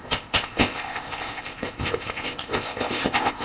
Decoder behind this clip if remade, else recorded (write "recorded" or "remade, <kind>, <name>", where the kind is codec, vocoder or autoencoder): remade, codec, ZipCodec